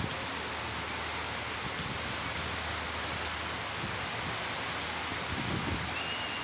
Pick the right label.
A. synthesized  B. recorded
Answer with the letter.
B